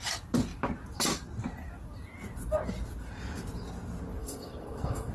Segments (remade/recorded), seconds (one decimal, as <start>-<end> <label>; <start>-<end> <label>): 0.0-4.2 recorded; 4.2-5.1 remade

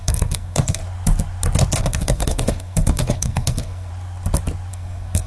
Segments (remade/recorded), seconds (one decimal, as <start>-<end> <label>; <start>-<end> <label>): 0.0-0.8 remade; 0.8-1.8 recorded; 1.8-3.9 remade; 3.9-4.7 recorded; 4.7-5.3 remade